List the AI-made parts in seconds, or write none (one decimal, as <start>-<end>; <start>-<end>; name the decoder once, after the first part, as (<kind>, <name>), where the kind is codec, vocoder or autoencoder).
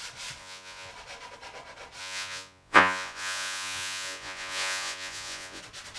0.4-0.9 (vocoder, Vocos); 2.0-5.6